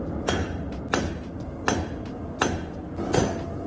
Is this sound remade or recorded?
recorded